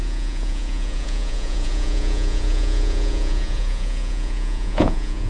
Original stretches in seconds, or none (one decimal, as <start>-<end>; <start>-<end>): none